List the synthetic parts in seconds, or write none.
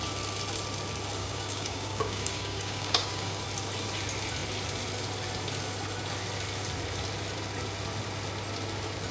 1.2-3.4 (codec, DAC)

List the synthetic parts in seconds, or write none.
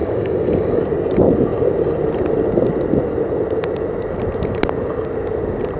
0.0-0.8 (codec, DAC)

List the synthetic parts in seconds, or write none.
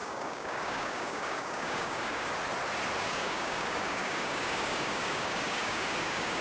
0.0-2.3 (codec, DAC); 3.0-6.4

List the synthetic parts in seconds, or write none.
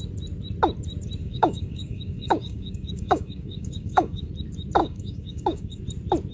1.2-4.3 (codec, DAC); 4.8-5.8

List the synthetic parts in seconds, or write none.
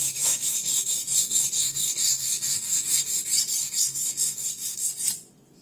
0.0-3.2 (codec, DAC); 3.6-4.9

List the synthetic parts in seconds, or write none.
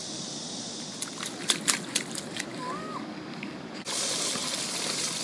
2.5-3.8 (codec, DAC)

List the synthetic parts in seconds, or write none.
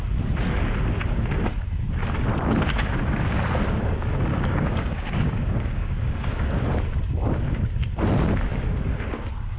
4.3-6.5 (codec, DAC)